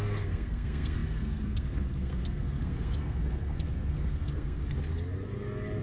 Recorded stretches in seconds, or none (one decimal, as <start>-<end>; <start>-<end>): 4.6-5.8